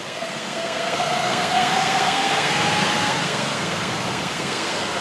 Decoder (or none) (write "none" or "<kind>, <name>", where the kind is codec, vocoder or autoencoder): codec, SNAC